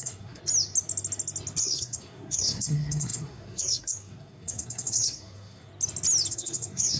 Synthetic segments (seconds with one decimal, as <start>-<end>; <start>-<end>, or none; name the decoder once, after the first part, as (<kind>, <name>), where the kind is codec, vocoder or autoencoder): 0.0-0.4 (codec, SNAC); 1.6-5.7; 6.3-7.0